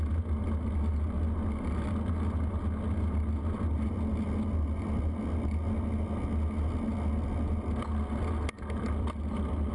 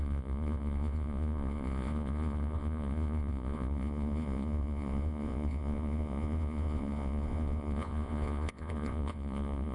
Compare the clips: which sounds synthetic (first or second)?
second